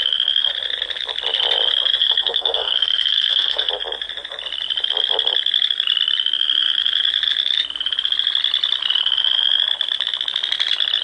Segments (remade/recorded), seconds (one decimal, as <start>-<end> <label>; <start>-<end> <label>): 0.0-2.0 recorded; 2.0-3.7 remade; 3.7-11.0 recorded